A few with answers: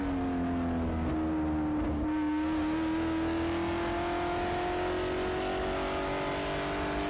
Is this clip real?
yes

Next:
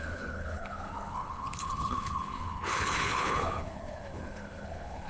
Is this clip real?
no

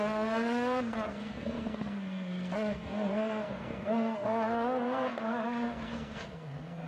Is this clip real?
no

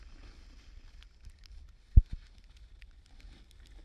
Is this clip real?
yes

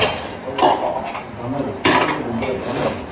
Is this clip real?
yes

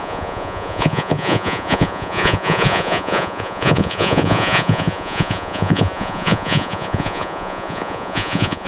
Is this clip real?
no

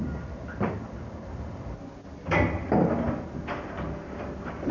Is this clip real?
yes